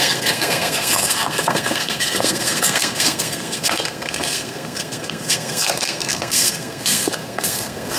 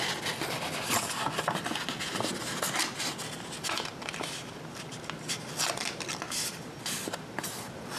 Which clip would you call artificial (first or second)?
first